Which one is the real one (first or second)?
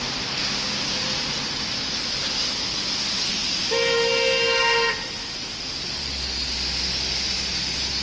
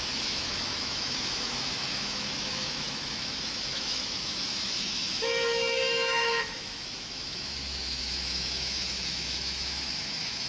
first